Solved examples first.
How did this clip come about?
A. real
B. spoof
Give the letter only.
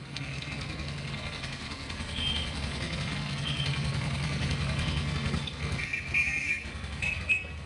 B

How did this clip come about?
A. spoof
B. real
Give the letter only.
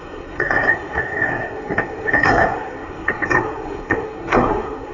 A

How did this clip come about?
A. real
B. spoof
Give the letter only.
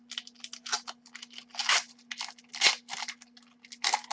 A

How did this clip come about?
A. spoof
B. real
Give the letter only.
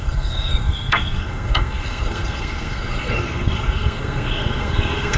A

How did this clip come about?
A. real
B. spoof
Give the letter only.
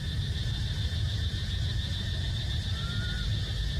A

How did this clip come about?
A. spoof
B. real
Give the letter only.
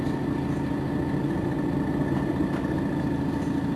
B